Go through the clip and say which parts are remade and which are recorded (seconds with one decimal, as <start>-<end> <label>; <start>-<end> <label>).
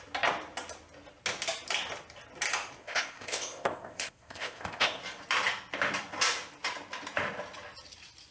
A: 0.0-2.8 recorded; 2.8-5.0 remade; 5.0-8.3 recorded